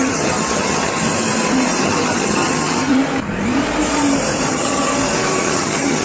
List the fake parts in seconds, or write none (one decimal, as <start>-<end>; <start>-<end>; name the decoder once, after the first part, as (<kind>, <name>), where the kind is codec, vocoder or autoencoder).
0.0-1.0 (vocoder, HiFi-GAN); 1.8-3.0; 4.5-4.9; 5.4-6.0